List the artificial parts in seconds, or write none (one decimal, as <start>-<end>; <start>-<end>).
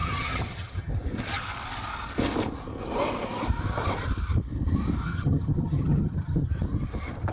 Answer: 0.0-0.9; 5.0-6.5